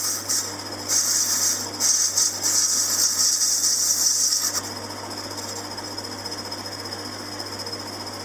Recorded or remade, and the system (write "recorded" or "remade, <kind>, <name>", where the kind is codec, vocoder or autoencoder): recorded